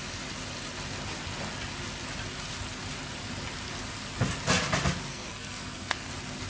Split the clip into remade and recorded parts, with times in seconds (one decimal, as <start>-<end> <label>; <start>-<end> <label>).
0.0-5.1 recorded; 5.1-6.1 remade; 6.1-6.5 recorded